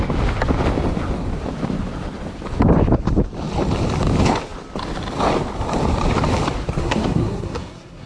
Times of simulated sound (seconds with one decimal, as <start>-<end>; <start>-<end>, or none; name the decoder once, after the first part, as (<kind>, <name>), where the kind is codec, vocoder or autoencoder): 6.8-8.1 (codec, SNAC)

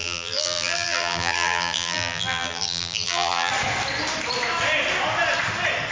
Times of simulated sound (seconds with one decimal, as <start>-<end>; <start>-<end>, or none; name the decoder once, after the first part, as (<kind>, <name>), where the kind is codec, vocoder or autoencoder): 0.0-3.5 (vocoder, BigVGAN v2)

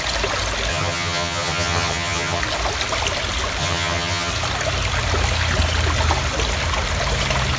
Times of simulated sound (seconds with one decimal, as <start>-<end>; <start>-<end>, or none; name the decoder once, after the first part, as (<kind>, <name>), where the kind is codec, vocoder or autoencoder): 0.7-2.4 (vocoder, HiFi-GAN); 3.6-4.3

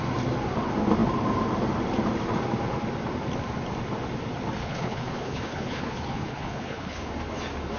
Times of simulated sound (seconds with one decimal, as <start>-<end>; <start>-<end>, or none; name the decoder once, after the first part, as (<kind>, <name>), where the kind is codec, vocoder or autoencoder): 4.6-7.1 (codec, HILCodec)

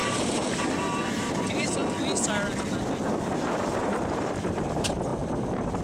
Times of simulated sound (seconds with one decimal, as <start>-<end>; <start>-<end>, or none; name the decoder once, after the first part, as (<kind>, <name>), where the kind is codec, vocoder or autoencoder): 0.0-1.8 (vocoder, BigVGAN v2); 3.3-5.8

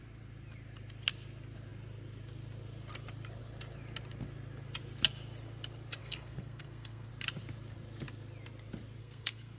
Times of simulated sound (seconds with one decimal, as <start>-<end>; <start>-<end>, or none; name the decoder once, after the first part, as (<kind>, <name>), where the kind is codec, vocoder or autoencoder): 6.0-7.1 (codec, SNAC); 9.0-9.6

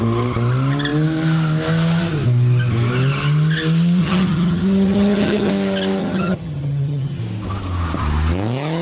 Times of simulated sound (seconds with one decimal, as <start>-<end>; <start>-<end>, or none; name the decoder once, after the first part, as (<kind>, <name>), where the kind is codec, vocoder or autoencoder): 4.0-5.5 (vocoder, HiFi-GAN); 6.0-7.2